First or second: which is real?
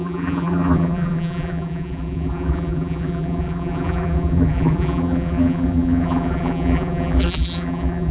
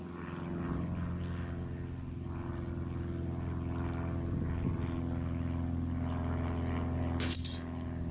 second